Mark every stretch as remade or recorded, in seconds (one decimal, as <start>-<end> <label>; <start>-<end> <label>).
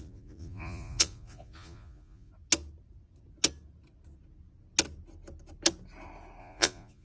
0.0-2.3 remade; 2.3-6.4 recorded; 6.4-7.0 remade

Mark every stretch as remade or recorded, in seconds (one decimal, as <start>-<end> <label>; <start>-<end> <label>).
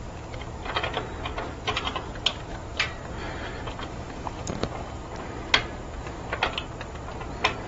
0.0-2.5 recorded; 2.5-5.1 remade; 5.1-7.7 recorded